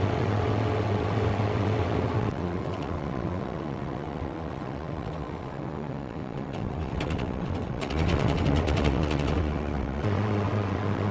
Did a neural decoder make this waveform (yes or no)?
yes